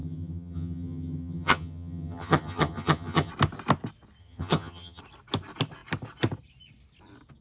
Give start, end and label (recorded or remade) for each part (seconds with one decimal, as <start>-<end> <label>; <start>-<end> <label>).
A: 0.0-3.3 remade; 3.3-4.2 recorded; 4.2-5.0 remade; 5.0-7.4 recorded